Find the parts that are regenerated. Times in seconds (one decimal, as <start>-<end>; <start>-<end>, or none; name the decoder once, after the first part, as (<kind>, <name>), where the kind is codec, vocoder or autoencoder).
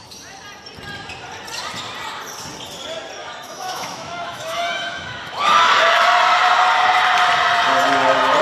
3.2-6.0 (autoencoder, DAC-VAE)